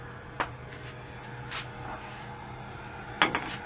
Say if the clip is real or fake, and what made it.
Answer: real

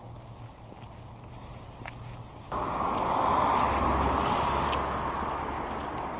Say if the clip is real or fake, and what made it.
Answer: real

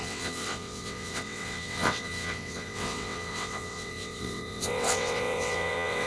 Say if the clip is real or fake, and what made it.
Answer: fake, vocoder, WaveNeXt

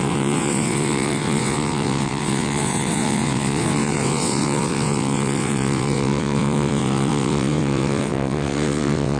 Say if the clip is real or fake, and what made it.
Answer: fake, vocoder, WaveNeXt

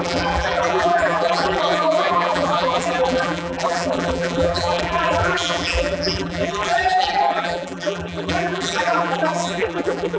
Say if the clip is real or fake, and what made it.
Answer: fake, vocoder, BigVGAN v2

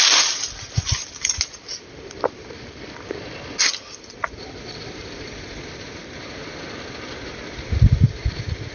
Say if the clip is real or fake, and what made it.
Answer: real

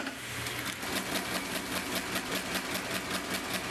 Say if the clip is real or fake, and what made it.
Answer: real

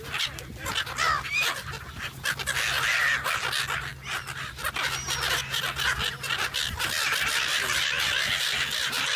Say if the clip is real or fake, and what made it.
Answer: real